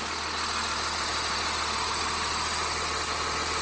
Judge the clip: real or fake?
real